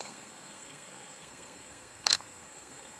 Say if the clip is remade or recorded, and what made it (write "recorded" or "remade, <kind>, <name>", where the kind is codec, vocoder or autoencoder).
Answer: remade, codec, SNAC